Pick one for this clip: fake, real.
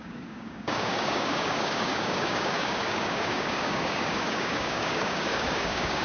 fake